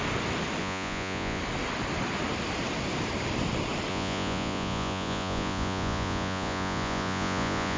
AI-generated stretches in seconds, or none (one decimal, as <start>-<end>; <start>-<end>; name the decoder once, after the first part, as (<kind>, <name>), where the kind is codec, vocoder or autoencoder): 0.6-1.4 (vocoder, Vocos); 3.9-7.8